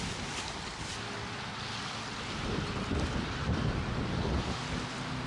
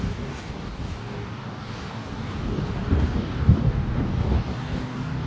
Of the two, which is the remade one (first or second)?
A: second